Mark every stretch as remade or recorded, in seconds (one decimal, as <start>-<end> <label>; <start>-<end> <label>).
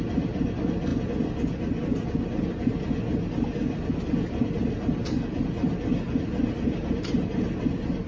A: 0.0-8.1 recorded